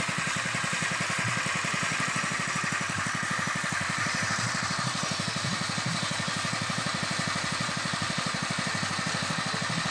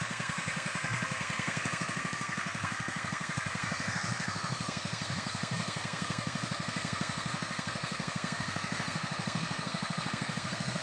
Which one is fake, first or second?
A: second